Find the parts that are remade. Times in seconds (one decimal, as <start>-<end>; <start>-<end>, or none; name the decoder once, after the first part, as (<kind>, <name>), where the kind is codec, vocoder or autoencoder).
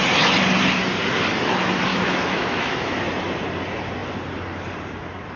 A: 1.9-3.0 (autoencoder, DAC-VAE)